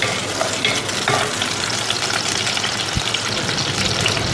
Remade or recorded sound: recorded